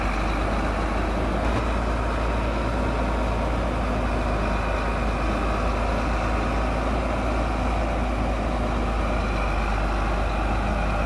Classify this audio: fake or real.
real